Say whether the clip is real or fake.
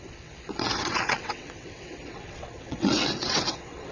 fake